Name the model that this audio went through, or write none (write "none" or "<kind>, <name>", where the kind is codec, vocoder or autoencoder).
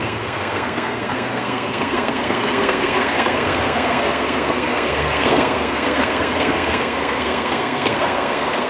codec, SNAC